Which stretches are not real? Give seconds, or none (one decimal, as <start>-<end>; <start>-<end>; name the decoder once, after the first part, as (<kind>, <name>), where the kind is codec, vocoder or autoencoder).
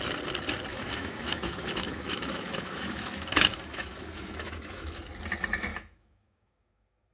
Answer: 0.7-5.0 (autoencoder, DAC-VAE); 5.7-7.1